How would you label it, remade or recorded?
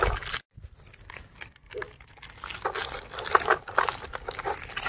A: recorded